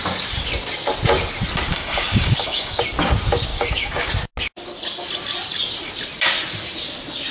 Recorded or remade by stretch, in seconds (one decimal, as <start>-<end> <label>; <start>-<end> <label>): 0.0-1.7 recorded; 1.7-2.8 remade; 2.8-3.5 recorded; 3.5-4.1 remade; 4.1-7.3 recorded